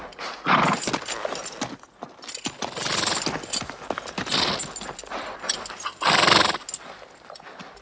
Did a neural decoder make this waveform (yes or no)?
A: no